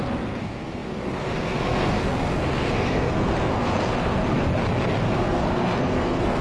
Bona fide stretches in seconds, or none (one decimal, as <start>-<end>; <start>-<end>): 4.5-5.0